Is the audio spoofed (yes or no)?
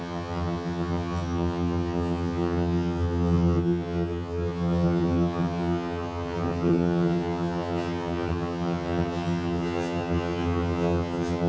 yes